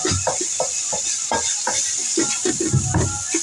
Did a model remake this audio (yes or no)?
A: no